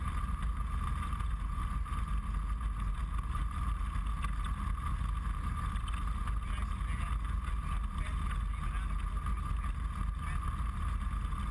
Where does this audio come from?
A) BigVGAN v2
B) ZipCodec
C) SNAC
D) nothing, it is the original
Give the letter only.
D